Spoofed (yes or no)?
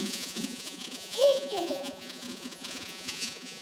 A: yes